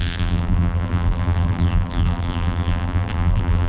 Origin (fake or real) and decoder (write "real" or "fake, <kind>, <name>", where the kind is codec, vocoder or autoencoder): fake, vocoder, BigVGAN v2